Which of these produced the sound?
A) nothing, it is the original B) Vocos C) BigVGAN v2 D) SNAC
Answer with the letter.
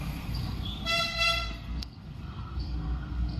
D